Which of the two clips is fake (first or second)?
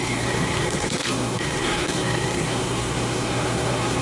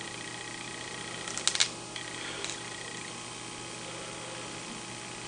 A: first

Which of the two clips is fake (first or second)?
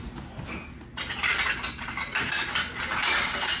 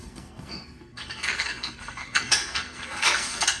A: second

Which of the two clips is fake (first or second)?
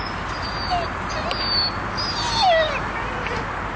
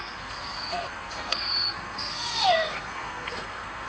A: second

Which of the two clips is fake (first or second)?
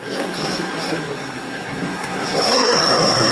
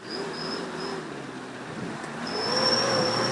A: first